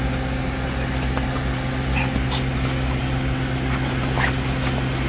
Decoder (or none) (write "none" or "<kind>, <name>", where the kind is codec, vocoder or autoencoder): none